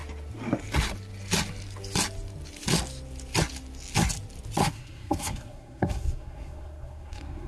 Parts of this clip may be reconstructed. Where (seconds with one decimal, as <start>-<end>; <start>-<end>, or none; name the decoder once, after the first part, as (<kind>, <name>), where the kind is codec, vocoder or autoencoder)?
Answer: 4.6-7.5 (codec, SNAC)